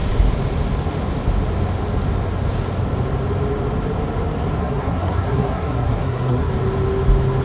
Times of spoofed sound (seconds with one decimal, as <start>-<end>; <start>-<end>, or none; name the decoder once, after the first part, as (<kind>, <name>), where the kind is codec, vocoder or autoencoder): 4.6-6.5 (codec, SNAC)